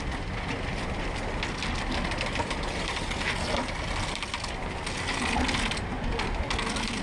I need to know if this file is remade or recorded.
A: recorded